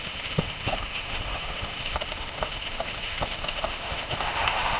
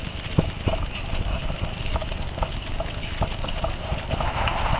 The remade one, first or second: first